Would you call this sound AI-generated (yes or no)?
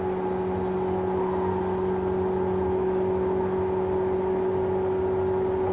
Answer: no